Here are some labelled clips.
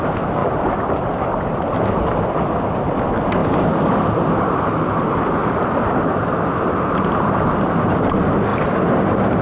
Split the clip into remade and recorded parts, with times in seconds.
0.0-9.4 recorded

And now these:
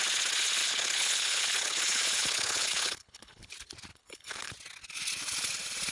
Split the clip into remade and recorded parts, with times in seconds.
0.0-0.6 recorded; 0.6-3.5 remade; 3.5-3.9 recorded; 3.9-4.5 remade; 4.5-5.9 recorded

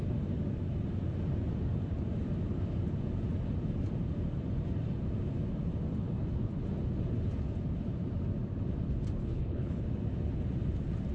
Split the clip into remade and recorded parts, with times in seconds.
0.0-9.2 recorded; 9.2-9.8 remade; 9.8-11.1 recorded

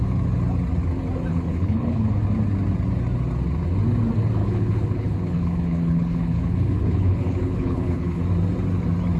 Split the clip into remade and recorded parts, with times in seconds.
0.0-1.3 recorded; 1.3-2.2 remade; 2.2-4.4 recorded; 4.4-8.2 remade; 8.2-9.2 recorded

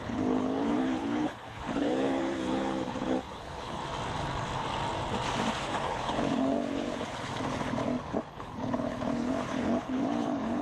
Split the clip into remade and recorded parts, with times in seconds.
0.0-3.8 remade; 3.8-5.6 recorded; 5.6-7.3 remade; 7.3-8.3 recorded; 8.3-10.6 remade